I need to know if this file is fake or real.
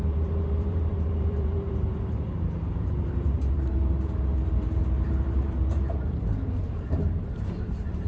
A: fake